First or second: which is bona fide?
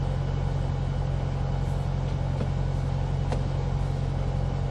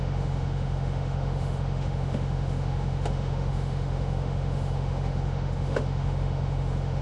first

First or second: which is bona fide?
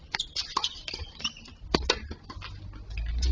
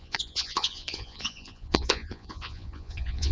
first